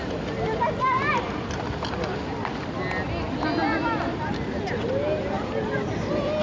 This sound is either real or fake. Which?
real